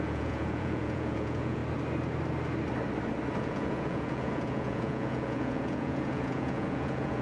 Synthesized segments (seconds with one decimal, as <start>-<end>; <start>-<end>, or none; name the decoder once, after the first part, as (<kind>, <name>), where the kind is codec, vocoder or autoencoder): 0.0-1.6 (vocoder, Vocos); 3.4-7.2